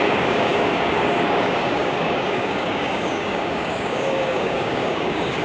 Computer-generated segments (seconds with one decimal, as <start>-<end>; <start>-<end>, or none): 0.0-5.4